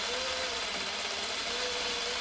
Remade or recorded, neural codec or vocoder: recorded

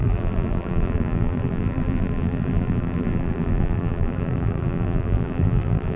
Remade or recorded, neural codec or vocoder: remade, vocoder, BigVGAN v2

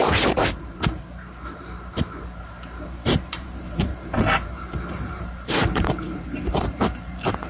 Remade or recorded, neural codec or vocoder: remade, vocoder, BigVGAN v2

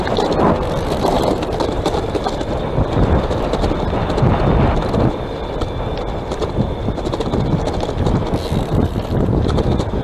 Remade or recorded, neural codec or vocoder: recorded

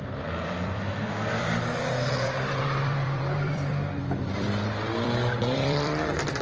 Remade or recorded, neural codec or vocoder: remade, vocoder, BigVGAN v2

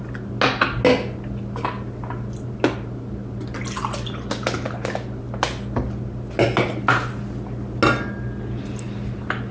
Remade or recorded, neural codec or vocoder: recorded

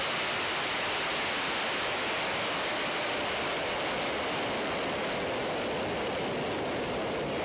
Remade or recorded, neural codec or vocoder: remade, vocoder, BigVGAN v2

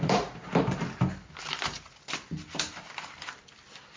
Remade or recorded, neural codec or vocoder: remade, vocoder, BigVGAN v2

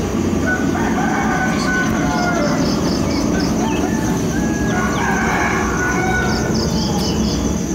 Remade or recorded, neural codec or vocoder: recorded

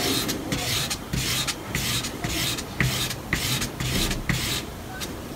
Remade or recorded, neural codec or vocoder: remade, vocoder, BigVGAN v2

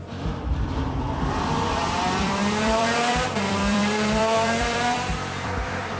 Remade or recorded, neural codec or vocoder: remade, vocoder, BigVGAN v2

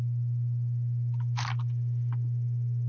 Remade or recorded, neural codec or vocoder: recorded